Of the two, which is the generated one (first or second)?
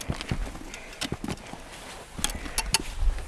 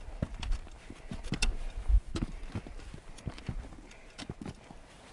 second